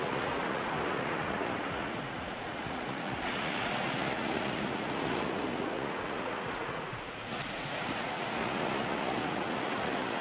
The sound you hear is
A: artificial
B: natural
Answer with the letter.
A